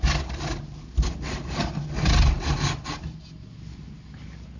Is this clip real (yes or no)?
yes